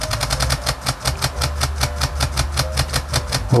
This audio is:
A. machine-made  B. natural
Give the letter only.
B